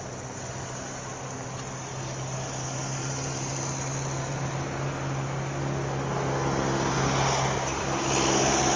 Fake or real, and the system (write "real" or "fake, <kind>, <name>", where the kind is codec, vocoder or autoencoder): real